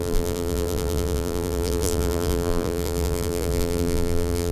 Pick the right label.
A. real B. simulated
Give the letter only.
B